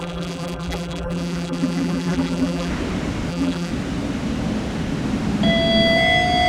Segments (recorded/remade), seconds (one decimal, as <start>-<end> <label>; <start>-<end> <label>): 0.0-2.7 remade; 2.7-3.3 recorded; 3.3-3.7 remade; 3.7-6.5 recorded

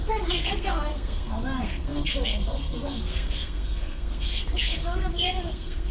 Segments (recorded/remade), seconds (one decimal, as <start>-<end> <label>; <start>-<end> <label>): 0.0-5.9 remade

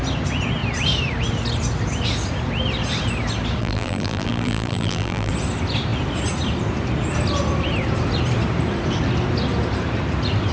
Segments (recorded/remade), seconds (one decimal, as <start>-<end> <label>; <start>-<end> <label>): 0.0-3.6 recorded; 3.6-5.3 remade; 5.3-10.5 recorded